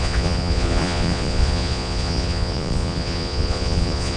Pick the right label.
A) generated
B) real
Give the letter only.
A